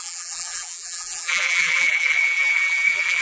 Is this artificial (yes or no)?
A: yes